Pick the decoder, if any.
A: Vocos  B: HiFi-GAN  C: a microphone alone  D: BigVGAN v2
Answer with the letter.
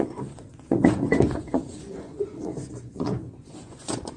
A